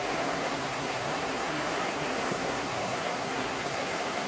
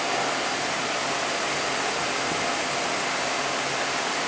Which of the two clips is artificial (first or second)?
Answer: first